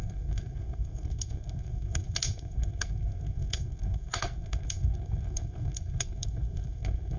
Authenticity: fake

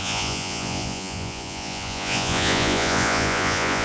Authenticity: fake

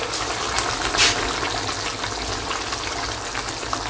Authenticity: real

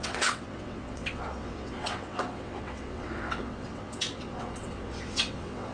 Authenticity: fake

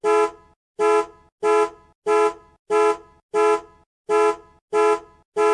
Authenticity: real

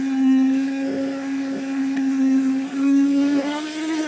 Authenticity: fake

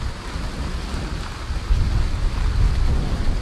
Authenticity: real